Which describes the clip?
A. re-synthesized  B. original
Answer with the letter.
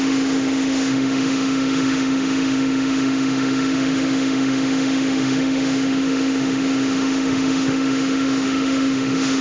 A